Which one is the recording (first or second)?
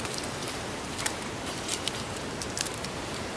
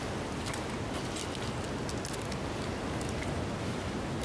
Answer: second